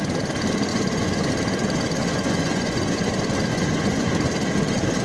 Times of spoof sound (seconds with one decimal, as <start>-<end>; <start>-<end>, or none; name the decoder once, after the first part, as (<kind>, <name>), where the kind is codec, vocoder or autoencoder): 0.7-1.3 (vocoder, Vocos); 2.0-3.1; 3.5-4.1